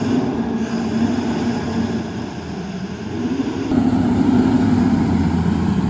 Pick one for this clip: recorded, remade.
recorded